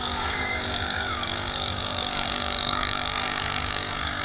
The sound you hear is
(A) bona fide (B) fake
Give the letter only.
B